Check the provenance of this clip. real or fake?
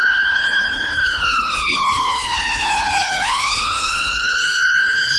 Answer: fake